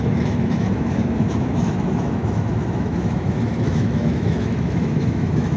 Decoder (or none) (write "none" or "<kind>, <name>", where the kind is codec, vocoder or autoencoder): autoencoder, DAC-VAE